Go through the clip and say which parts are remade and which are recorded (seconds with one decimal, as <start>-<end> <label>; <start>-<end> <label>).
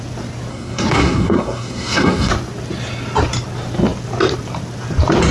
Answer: 0.0-0.5 recorded; 0.5-2.3 remade; 2.3-5.3 recorded